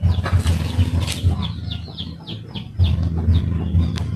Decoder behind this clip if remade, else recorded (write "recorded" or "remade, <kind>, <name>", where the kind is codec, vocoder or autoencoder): recorded